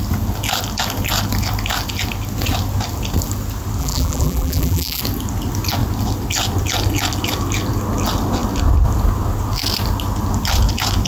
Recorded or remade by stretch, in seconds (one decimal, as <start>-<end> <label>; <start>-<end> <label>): 0.0-3.8 recorded; 3.8-5.0 remade; 5.0-11.1 recorded